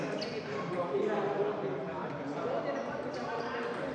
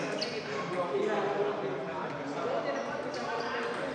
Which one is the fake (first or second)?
first